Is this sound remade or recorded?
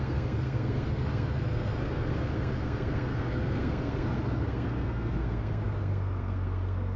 remade